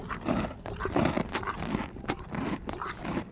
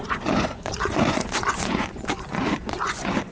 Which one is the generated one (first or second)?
second